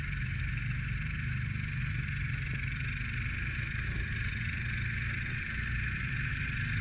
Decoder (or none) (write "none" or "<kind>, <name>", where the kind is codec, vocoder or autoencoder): none